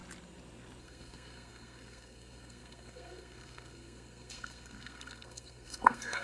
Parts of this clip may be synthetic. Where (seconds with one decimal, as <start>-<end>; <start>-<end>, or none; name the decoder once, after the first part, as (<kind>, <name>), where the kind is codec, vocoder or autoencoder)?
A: 0.8-6.2 (codec, SNAC)